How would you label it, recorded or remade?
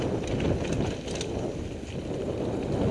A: recorded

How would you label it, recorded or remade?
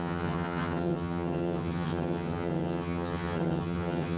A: remade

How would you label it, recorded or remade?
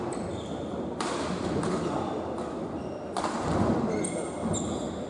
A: recorded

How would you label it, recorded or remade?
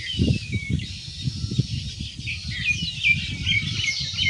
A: recorded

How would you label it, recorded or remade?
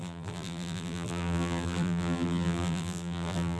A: remade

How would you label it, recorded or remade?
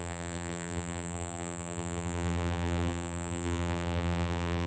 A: remade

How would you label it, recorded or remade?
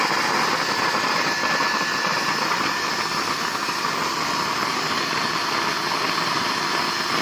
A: recorded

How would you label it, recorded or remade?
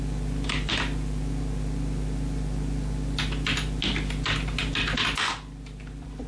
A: recorded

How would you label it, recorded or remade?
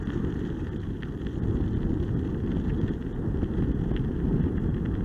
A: recorded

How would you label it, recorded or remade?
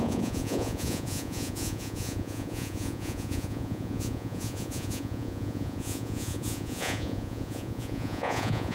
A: remade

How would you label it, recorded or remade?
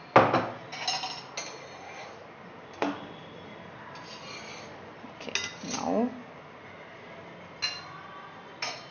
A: recorded